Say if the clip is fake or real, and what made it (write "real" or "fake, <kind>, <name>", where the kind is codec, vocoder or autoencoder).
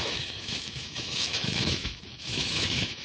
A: fake, autoencoder, DAC-VAE